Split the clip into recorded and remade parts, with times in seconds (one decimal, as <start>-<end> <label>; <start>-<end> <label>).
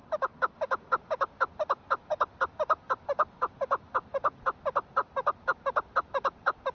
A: 0.0-6.7 recorded